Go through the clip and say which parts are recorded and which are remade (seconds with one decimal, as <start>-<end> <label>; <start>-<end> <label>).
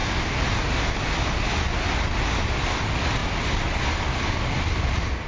0.0-5.3 recorded